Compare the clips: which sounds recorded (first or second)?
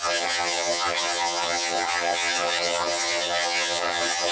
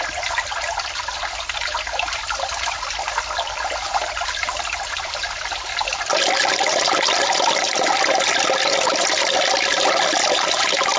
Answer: second